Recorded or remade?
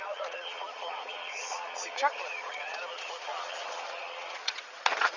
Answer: remade